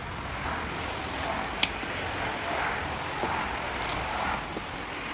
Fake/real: real